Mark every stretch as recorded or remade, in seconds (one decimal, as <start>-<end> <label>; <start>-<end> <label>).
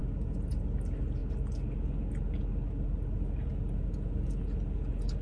0.0-5.2 recorded